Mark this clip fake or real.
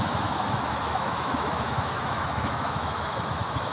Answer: fake